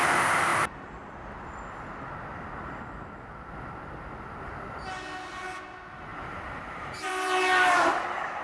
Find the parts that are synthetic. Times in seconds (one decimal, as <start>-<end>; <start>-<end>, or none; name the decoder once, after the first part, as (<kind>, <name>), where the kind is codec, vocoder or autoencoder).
6.1-8.4 (vocoder, BigVGAN v2)